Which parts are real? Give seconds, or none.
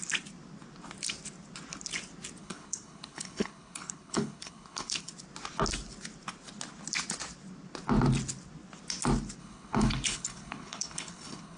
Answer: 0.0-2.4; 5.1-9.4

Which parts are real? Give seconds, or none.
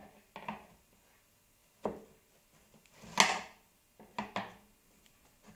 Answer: 0.0-5.6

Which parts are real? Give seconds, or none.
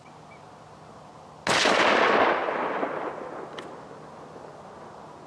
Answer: 0.0-5.3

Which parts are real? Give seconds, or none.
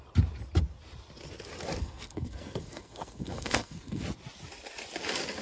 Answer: 0.0-1.8; 4.0-5.4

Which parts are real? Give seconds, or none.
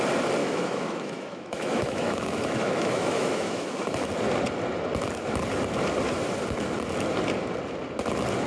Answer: 0.0-0.4; 4.1-8.5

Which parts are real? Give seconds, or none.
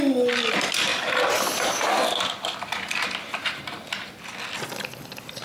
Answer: 0.0-0.9; 4.1-5.4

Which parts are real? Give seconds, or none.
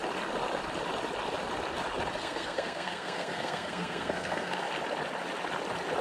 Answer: 0.0-2.2; 4.6-6.0